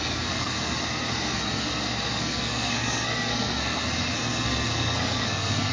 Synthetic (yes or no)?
yes